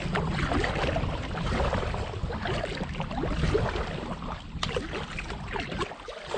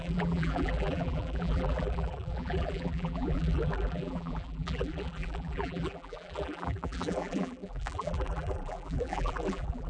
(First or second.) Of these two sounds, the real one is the first